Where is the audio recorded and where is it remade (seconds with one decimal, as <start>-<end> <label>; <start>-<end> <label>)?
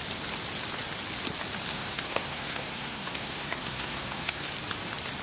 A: 0.0-1.7 recorded; 1.7-4.5 remade; 4.5-5.2 recorded